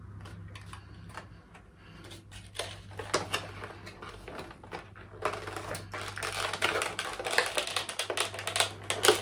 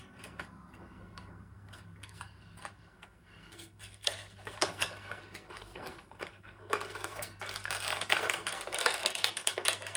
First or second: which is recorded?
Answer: first